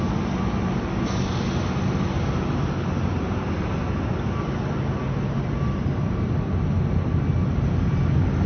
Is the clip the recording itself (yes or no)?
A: yes